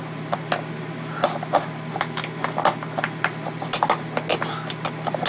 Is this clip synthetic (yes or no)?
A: no